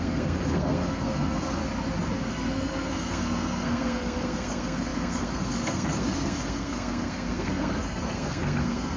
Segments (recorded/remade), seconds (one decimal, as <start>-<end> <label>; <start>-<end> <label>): 0.0-1.6 remade; 1.6-2.3 recorded; 2.3-9.0 remade